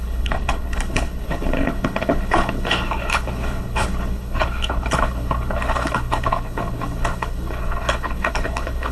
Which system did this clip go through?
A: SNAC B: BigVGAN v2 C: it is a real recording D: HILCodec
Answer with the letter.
D